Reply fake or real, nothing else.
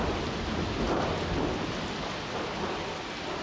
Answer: real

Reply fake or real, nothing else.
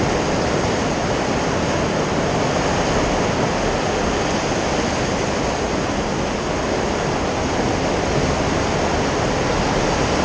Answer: real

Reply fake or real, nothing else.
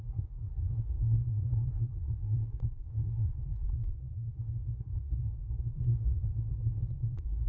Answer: fake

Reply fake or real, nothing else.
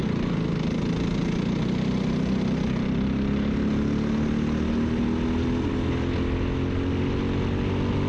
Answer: real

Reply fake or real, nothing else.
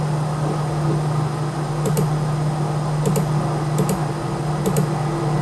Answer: real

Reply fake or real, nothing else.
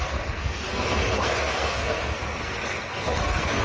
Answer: fake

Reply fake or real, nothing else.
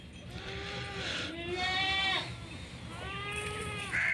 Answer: real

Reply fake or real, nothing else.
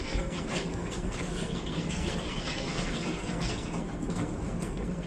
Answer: fake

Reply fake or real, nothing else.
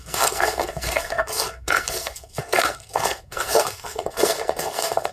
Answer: fake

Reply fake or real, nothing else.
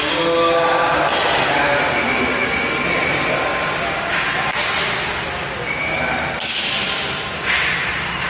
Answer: real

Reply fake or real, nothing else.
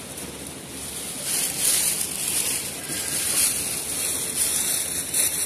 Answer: real